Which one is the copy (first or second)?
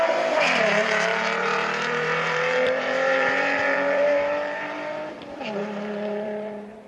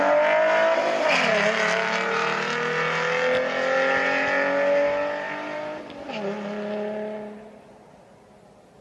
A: first